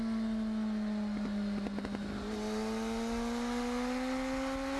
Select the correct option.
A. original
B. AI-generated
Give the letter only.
A